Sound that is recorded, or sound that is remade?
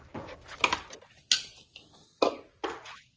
recorded